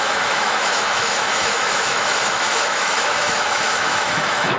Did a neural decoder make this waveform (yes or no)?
yes